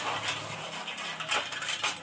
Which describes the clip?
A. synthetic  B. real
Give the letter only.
B